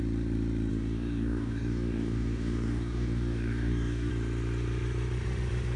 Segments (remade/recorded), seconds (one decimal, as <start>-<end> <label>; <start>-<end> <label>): 0.0-0.7 recorded; 0.7-4.1 remade; 4.1-5.8 recorded

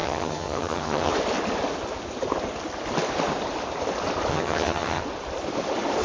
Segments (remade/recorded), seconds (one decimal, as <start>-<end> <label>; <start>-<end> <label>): 0.0-1.1 remade; 1.1-4.3 recorded; 4.3-5.0 remade; 5.0-6.0 recorded

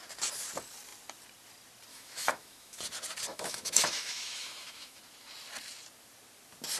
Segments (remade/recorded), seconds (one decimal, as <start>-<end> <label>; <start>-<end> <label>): 0.0-1.9 recorded; 1.9-2.8 remade; 2.8-3.3 recorded; 3.3-5.0 remade; 5.0-6.8 recorded

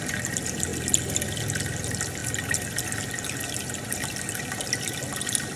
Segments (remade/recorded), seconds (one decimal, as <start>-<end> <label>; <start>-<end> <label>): 0.0-5.6 recorded

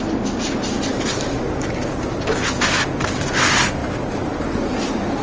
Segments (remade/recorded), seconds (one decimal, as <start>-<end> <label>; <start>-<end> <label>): 0.0-0.9 recorded; 0.9-1.7 remade; 1.7-3.8 recorded; 3.8-4.5 remade; 4.5-5.2 recorded

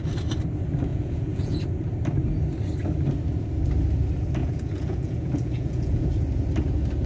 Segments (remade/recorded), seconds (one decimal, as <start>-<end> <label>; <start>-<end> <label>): 0.0-0.9 recorded; 0.9-1.6 remade; 1.6-4.4 recorded; 4.4-6.1 remade; 6.1-7.1 recorded